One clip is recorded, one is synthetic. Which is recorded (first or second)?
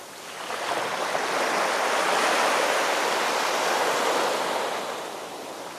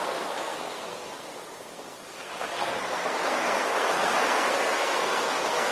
first